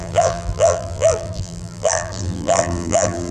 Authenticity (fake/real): fake